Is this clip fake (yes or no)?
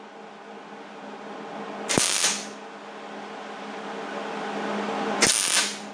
no